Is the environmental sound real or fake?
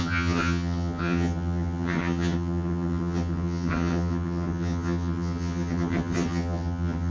fake